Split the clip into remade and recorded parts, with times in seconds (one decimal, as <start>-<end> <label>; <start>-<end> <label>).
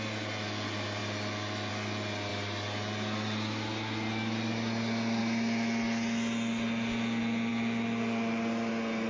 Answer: 0.0-9.1 recorded